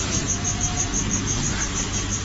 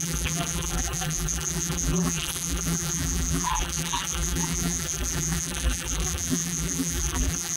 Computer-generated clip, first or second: second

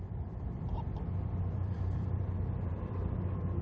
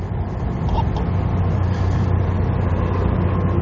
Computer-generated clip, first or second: first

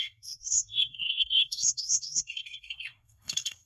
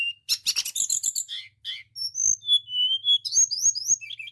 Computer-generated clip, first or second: first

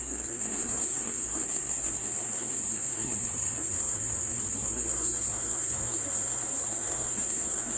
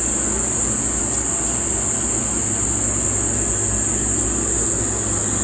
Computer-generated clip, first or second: first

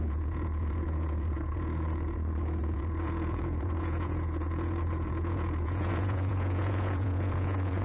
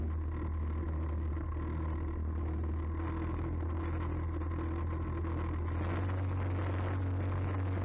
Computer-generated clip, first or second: first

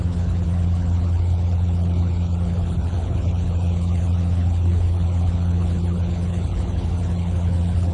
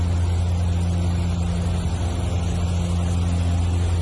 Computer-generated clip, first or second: first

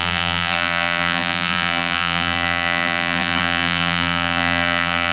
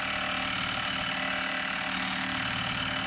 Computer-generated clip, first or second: first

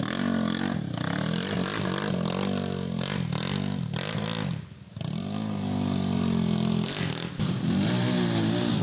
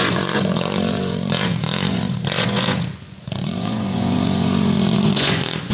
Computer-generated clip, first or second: second